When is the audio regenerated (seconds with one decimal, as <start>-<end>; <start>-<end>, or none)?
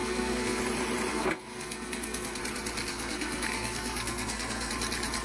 0.0-0.6; 1.1-2.4; 2.9-4.7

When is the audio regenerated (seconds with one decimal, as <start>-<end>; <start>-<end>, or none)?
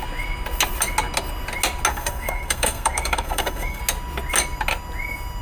1.9-3.8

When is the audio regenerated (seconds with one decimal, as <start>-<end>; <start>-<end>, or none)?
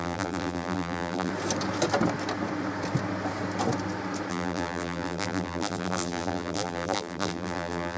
0.0-1.3; 4.3-8.0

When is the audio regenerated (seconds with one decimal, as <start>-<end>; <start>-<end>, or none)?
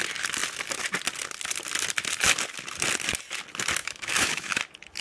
3.8-4.6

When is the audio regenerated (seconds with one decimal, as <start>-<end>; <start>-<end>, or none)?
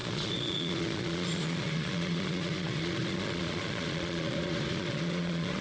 0.0-5.6